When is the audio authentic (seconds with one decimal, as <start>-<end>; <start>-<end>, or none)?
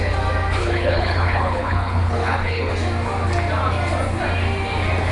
0.0-0.6; 2.7-5.1